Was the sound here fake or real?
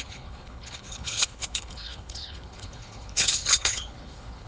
fake